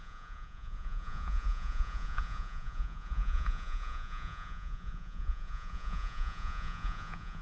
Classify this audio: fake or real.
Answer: fake